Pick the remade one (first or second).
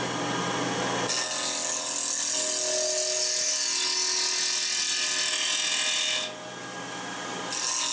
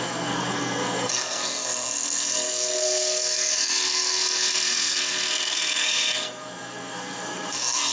second